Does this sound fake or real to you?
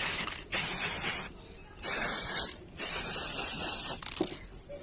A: real